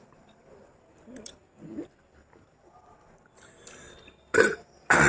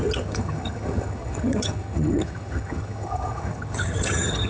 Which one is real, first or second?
first